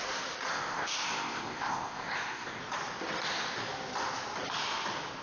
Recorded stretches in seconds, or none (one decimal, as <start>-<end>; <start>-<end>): 0.0-0.5; 2.6-5.2